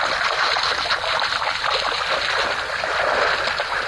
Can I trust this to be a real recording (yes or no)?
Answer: yes